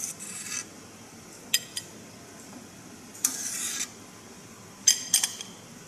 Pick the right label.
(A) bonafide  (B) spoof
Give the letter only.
B